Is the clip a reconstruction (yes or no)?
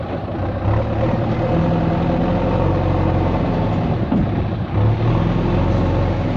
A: no